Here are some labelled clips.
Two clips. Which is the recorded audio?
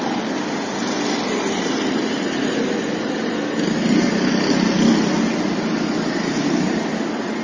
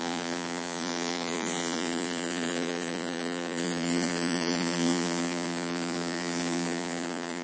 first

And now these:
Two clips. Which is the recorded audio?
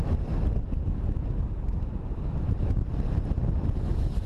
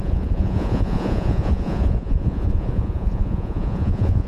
first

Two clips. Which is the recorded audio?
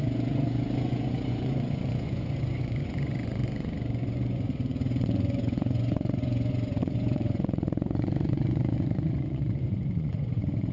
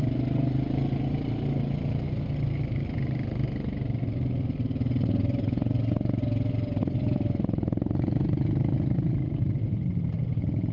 second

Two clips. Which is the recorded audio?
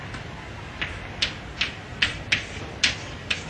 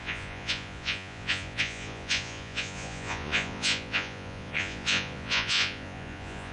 first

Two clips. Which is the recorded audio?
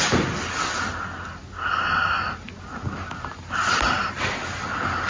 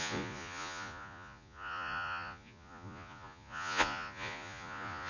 first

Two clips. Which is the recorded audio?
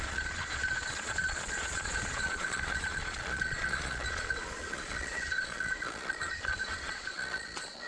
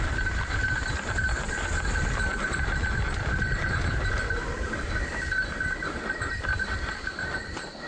second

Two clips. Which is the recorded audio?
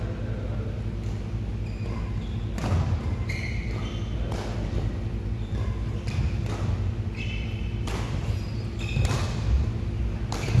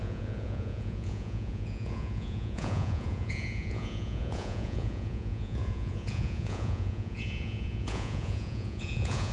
first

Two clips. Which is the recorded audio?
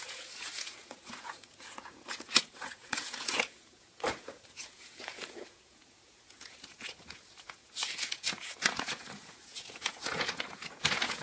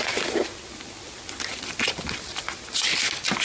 second